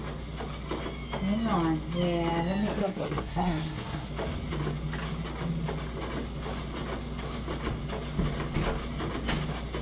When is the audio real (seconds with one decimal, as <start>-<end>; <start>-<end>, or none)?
0.0-2.8; 4.1-9.8